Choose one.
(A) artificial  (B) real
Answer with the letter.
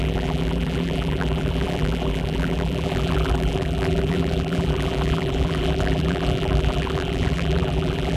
A